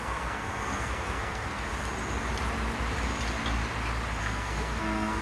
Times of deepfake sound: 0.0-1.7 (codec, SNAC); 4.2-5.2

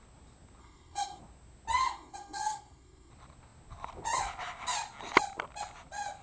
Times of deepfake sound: 0.6-1.2 (codec, SNAC); 1.8-3.1

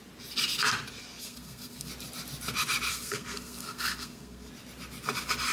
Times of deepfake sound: 1.2-1.9 (codec, SNAC); 2.9-4.5

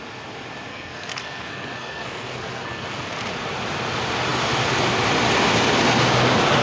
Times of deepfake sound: 0.7-3.1 (codec, SNAC)

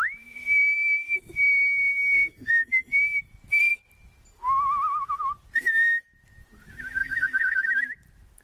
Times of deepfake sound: 2.0-2.5 (codec, SNAC); 7.0-7.7